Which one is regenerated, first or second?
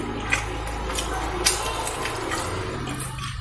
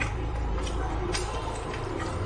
second